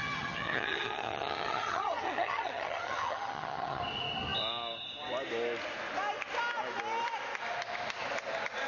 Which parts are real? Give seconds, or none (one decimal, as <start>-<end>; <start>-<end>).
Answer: 3.8-8.7